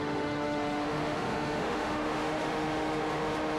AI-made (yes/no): yes